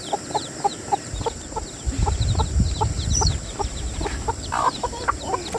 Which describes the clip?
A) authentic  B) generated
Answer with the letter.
B